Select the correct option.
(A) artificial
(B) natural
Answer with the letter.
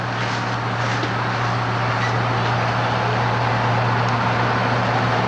B